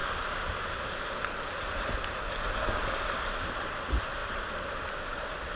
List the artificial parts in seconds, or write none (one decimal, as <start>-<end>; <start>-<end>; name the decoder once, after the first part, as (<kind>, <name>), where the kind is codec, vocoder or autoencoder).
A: none